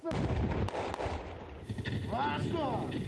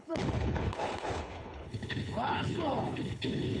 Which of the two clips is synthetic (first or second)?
second